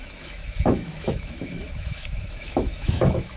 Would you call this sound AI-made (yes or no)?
yes